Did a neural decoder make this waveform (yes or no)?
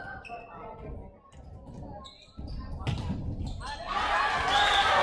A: no